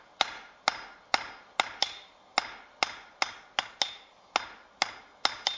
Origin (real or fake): real